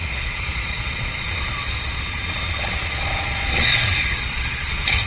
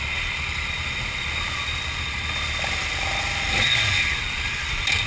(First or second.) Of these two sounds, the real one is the second